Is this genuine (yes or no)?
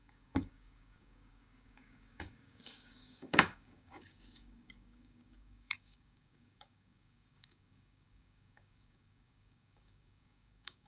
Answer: no